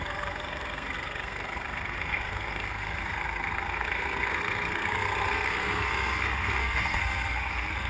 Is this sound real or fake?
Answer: fake